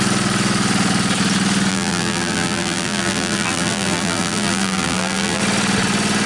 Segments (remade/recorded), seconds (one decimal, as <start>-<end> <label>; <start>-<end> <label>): 0.0-1.7 recorded; 1.7-5.4 remade; 5.4-6.3 recorded